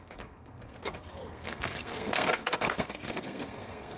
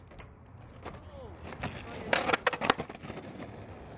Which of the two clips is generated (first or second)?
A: first